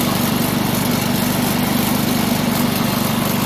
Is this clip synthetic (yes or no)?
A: no